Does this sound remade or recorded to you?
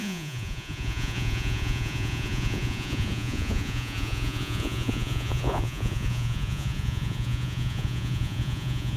remade